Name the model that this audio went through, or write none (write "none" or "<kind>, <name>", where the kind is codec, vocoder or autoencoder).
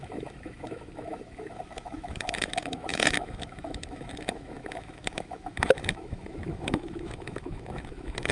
autoencoder, DAC-VAE